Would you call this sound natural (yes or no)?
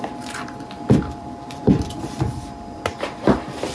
no